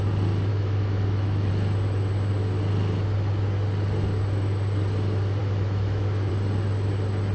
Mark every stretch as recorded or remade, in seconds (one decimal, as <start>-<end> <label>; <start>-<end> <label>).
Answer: 0.0-0.5 recorded; 0.5-1.5 remade; 1.5-5.4 recorded; 5.4-6.3 remade; 6.3-7.3 recorded

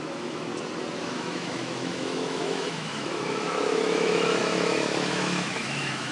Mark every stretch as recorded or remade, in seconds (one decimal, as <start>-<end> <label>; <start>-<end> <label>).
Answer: 0.0-0.5 remade; 0.5-1.0 recorded; 1.0-6.1 remade

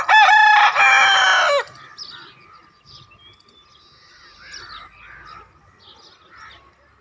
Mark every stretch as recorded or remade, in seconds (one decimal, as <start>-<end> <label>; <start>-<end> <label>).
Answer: 0.0-7.0 recorded